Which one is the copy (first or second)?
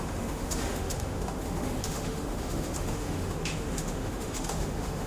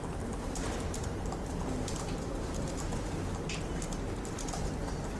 first